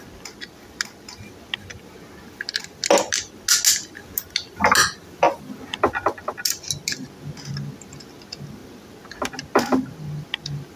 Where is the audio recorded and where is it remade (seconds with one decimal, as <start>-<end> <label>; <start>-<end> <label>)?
0.0-10.8 recorded